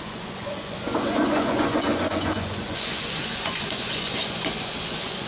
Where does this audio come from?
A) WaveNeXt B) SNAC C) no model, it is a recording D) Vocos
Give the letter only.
D